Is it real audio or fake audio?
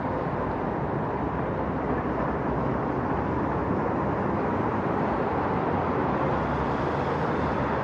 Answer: fake